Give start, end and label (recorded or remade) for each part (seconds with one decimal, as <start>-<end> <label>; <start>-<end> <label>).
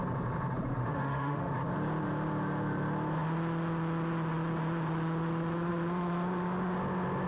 0.0-0.8 recorded; 0.8-1.5 remade; 1.5-7.3 recorded